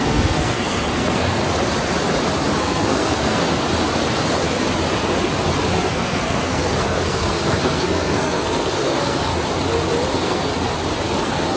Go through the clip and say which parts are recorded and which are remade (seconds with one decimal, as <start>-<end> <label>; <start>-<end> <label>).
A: 0.0-1.4 remade; 1.4-2.6 recorded; 2.6-3.4 remade; 3.4-5.9 recorded; 5.9-9.3 remade; 9.3-10.1 recorded; 10.1-10.5 remade; 10.5-11.0 recorded; 11.0-11.6 remade